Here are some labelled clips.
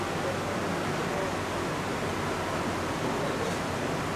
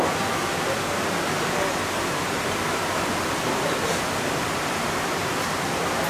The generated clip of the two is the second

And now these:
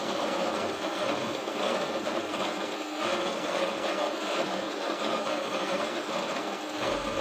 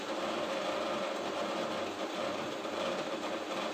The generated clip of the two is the first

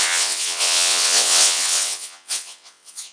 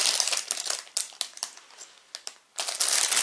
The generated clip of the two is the first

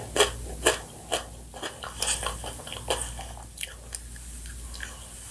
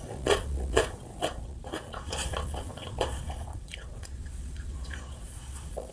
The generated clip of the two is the second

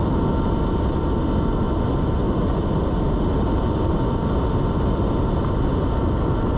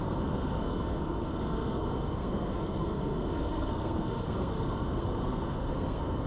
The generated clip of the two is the second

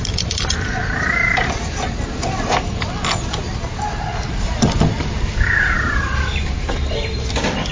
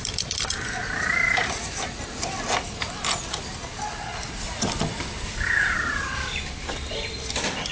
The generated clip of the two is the second